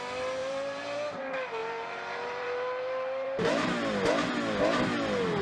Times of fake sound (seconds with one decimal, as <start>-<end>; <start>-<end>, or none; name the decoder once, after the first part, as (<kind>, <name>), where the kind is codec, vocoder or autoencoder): 0.4-1.2 (vocoder, BigVGAN v2); 1.6-3.7

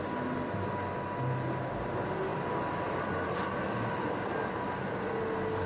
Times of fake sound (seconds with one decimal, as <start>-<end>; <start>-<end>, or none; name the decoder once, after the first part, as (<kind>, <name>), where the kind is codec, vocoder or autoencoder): none

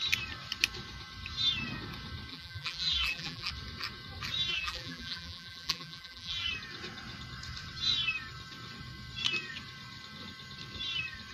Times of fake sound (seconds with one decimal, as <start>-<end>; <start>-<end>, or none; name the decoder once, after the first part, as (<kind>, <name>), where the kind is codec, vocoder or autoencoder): 2.3-3.5 (vocoder, BigVGAN v2); 4.5-6.5

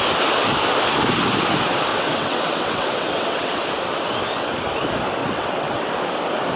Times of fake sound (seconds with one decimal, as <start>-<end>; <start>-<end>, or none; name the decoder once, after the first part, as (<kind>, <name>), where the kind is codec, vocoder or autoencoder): 1.9-3.6 (vocoder, WaveNeXt); 5.2-5.8

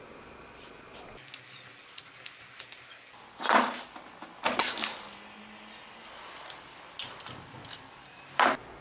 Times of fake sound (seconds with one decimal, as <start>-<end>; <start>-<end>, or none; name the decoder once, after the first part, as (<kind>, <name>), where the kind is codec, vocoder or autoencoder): 7.6-8.8 (vocoder, BigVGAN v2)

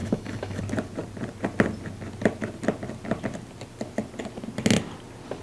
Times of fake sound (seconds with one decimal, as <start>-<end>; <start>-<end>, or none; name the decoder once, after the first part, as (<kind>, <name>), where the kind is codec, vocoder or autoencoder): 0.0-0.6 (autoencoder, DAC-VAE)